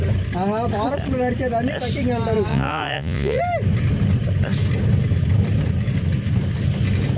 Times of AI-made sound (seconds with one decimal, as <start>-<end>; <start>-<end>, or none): 2.5-3.4